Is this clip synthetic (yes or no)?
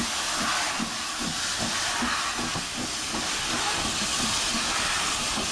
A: no